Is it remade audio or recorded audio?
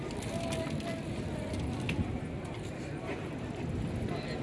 recorded